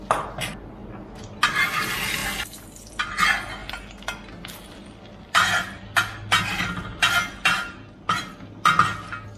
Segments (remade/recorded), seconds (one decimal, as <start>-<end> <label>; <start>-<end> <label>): 0.0-9.4 recorded